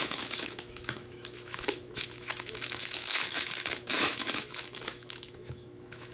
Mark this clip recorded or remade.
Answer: remade